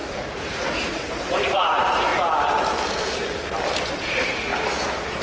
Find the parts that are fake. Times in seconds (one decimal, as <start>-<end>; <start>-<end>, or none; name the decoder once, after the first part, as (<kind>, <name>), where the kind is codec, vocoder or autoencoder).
0.0-2.1 (vocoder, Vocos); 3.9-4.5